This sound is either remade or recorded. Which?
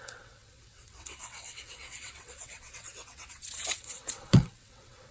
remade